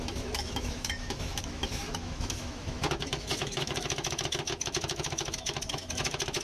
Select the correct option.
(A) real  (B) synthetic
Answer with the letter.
B